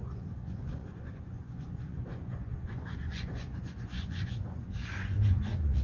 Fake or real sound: fake